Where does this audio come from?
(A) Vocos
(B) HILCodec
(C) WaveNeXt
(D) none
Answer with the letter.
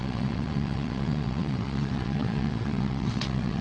C